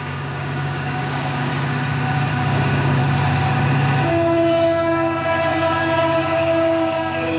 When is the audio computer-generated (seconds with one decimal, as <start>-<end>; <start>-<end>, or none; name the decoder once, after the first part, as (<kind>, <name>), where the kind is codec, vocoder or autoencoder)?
0.0-1.5 (codec, DAC); 2.3-3.0; 4.1-7.4